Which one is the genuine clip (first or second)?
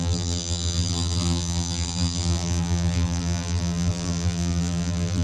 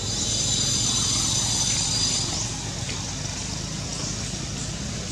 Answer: second